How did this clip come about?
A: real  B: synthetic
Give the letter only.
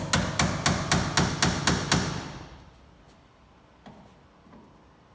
A